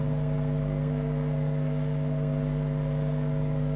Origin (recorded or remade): remade